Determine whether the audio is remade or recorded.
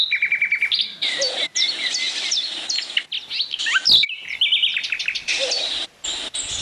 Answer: recorded